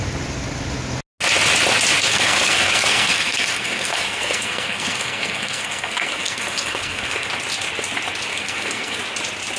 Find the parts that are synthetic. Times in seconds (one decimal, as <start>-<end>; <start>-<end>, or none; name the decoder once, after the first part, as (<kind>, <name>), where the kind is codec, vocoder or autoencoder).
2.1-7.3 (codec, SNAC); 8.3-9.0